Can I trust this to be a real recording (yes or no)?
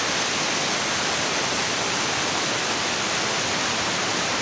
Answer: yes